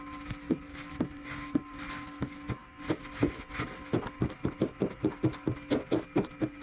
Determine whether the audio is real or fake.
real